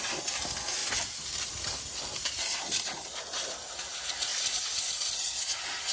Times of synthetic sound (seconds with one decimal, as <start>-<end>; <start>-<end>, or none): none